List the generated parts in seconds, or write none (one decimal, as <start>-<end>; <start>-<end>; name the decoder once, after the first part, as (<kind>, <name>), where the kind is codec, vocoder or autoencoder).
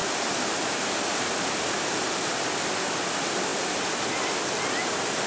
none